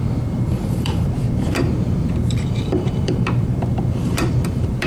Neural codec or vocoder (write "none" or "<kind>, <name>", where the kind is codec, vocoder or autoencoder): vocoder, BigVGAN v2